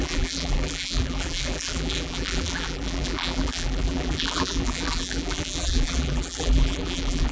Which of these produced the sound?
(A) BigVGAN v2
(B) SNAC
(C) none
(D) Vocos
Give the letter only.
A